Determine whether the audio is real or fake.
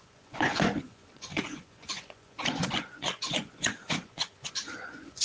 fake